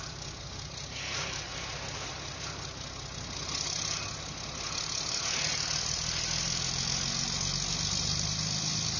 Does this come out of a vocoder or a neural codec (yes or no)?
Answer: no